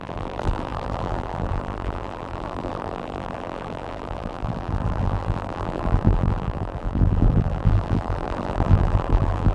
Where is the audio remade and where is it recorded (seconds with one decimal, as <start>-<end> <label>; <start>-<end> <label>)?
0.0-9.5 remade